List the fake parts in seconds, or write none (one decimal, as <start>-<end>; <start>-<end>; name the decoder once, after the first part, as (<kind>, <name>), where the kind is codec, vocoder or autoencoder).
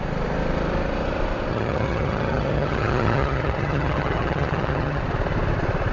1.5-5.0 (vocoder, HiFi-GAN)